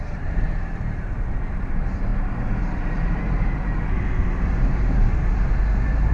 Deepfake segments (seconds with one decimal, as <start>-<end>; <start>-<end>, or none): 0.0-6.1